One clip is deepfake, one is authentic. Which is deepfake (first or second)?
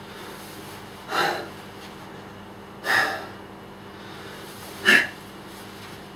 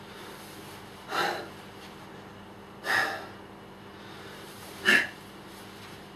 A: second